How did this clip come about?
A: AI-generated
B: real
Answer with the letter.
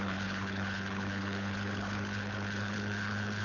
A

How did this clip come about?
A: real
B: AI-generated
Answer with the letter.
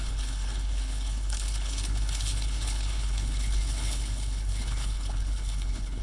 B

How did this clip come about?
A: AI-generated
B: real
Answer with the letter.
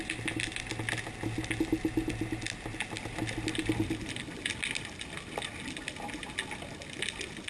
B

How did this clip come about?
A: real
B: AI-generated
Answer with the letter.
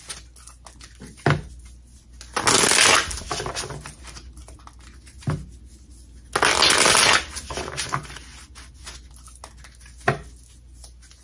A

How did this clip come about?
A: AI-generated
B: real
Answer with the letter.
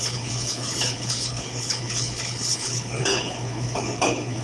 A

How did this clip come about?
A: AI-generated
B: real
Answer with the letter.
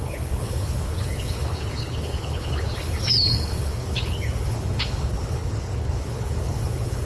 A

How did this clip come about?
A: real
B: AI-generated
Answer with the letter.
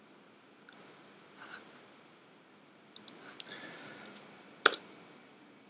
A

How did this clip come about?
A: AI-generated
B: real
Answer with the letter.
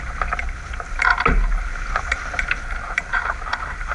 B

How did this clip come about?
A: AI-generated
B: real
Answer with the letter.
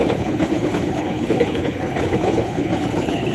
A